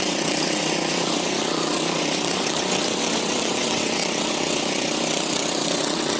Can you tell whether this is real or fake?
fake